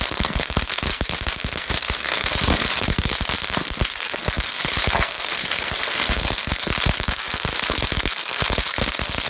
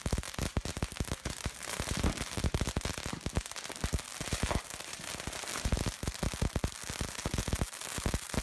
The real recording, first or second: second